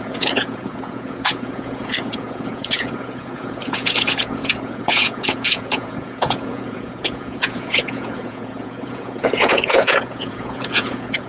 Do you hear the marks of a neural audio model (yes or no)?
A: yes